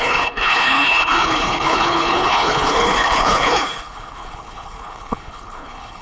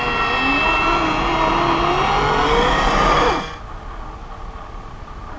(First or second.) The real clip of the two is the second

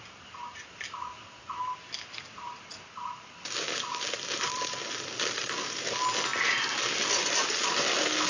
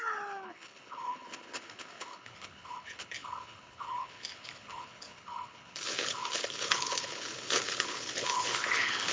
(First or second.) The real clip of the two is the first